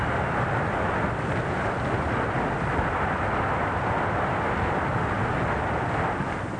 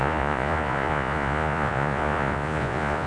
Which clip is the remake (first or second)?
second